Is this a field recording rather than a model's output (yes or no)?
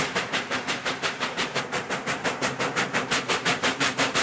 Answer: no